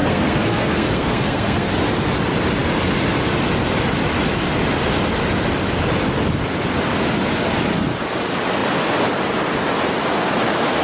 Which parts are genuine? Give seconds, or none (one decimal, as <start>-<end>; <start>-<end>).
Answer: 1.7-10.8